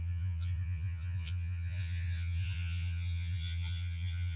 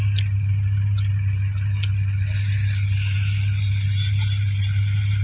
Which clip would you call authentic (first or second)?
second